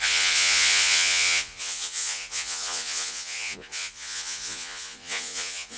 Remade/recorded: remade